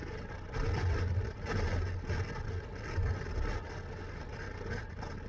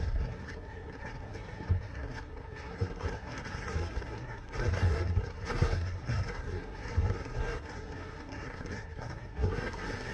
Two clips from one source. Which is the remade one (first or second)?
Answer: second